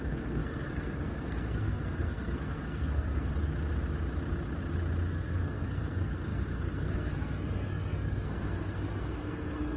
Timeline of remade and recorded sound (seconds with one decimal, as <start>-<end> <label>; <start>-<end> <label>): 0.0-3.3 remade; 3.3-5.1 recorded; 5.1-9.8 remade